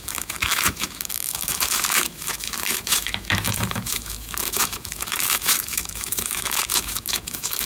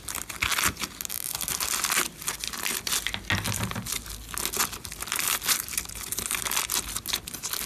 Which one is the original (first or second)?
second